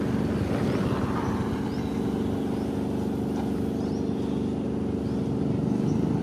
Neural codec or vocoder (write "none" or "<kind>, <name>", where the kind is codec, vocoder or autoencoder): none